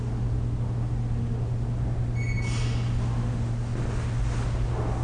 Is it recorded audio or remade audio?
recorded